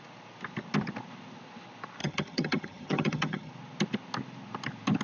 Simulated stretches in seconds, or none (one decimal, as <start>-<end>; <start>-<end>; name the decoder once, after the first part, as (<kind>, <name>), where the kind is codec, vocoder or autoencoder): 2.0-3.5 (vocoder, HiFi-GAN)